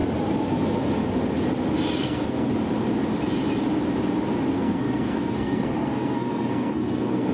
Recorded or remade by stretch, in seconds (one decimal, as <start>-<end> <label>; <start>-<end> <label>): 0.0-2.0 recorded; 2.0-2.5 remade; 2.5-4.5 recorded; 4.5-7.3 remade